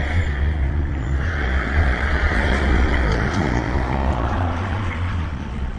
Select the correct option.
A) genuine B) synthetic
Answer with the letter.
B